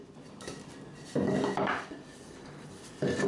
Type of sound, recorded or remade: recorded